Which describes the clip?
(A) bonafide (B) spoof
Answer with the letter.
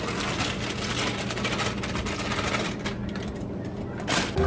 A